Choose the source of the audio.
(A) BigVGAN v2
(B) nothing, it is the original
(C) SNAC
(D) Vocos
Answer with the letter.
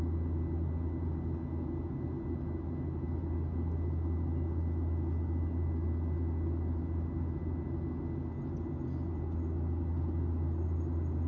B